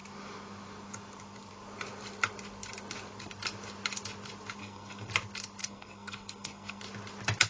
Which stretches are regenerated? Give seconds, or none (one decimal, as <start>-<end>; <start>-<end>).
4.6-5.1; 5.6-6.8